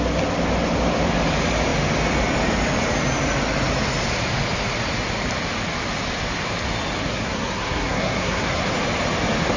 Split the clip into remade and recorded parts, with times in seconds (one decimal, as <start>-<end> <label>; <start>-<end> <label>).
0.0-7.0 recorded; 7.0-8.6 remade; 8.6-9.6 recorded